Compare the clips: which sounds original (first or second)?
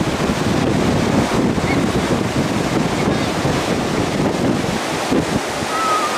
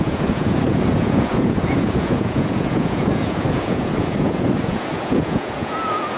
first